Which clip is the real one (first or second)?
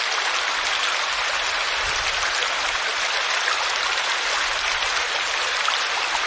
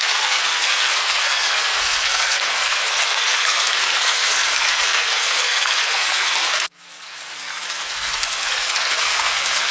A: first